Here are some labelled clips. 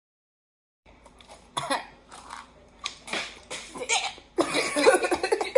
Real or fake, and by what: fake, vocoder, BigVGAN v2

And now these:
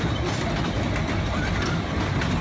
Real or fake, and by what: real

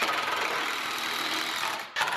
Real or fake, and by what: fake, vocoder, BigVGAN v2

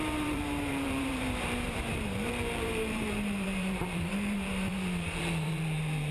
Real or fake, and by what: fake, vocoder, BigVGAN v2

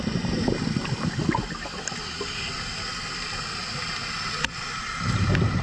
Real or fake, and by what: real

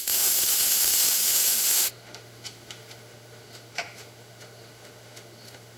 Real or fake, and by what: fake, autoencoder, DAC-VAE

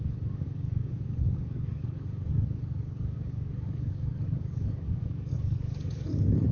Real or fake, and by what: fake, codec, DAC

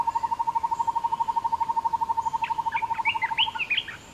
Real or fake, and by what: real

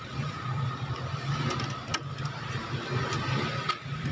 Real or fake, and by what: real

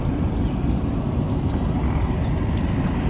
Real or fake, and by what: real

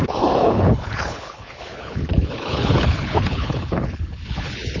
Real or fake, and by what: fake, codec, HILCodec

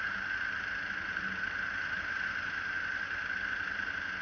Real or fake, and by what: real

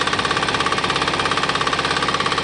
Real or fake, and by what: real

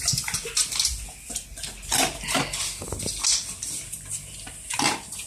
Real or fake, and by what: real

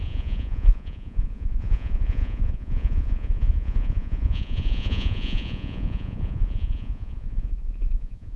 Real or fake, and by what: fake, vocoder, Vocos